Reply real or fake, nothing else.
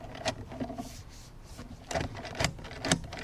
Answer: real